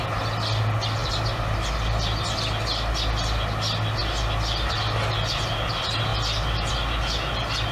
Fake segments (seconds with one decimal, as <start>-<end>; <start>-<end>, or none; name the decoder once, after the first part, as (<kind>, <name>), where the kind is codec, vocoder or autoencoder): 1.0-1.7 (vocoder, BigVGAN v2)